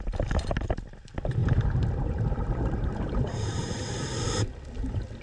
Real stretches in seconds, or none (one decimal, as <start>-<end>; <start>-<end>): 0.0-1.4; 3.8-5.2